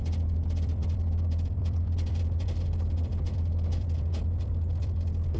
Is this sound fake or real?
fake